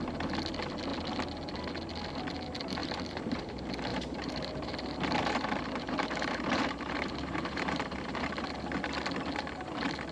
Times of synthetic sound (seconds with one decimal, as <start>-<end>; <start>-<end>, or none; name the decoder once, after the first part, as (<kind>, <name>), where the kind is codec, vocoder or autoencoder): 2.8-3.5 (vocoder, BigVGAN v2); 3.9-8.3